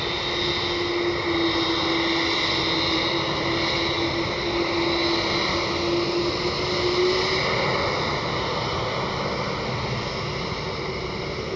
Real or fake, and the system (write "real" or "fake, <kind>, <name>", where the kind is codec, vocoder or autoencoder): real